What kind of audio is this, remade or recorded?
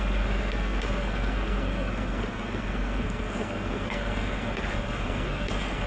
remade